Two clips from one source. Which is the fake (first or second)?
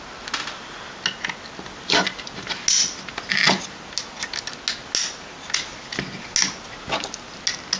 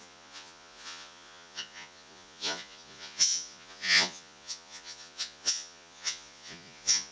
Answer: second